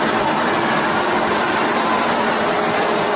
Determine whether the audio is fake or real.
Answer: real